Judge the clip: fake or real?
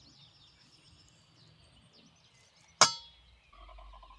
real